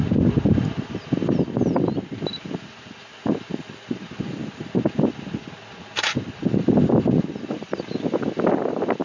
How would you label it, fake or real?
real